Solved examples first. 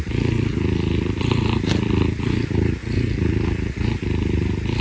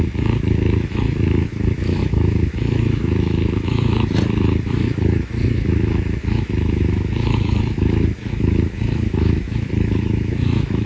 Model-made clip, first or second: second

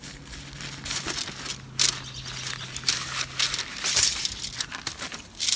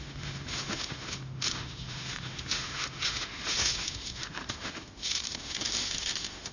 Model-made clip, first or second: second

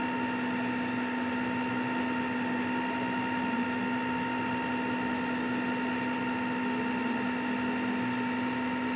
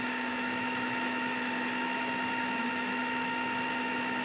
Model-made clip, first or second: second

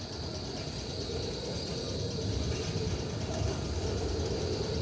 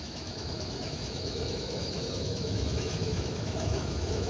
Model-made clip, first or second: second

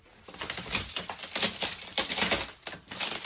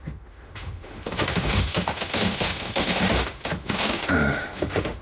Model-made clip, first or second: second